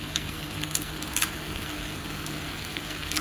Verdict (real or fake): fake